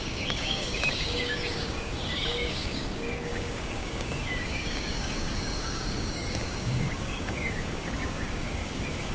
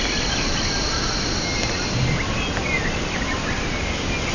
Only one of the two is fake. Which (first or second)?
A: first